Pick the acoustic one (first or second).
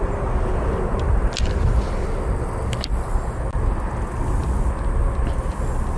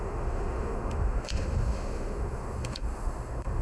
first